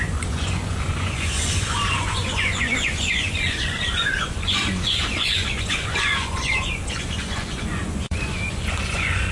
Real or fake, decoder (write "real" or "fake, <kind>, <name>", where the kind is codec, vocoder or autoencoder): fake, vocoder, Vocos